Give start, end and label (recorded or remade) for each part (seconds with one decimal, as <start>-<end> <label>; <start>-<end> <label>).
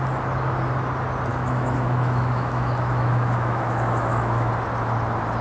0.0-1.3 recorded; 1.3-4.5 remade; 4.5-5.4 recorded